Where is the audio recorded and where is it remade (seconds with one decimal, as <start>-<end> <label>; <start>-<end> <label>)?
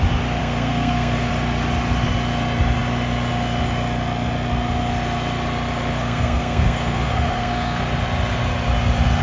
0.0-0.4 recorded; 0.4-1.3 remade; 1.3-5.9 recorded; 5.9-7.8 remade; 7.8-9.2 recorded